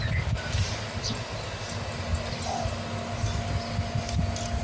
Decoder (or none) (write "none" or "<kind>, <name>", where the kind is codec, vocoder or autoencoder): none